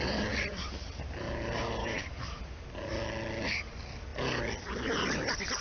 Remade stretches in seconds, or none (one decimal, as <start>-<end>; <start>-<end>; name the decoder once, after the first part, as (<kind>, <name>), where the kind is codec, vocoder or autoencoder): 1.8-2.4 (codec, DAC)